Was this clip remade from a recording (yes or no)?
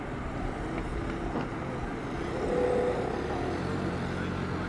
no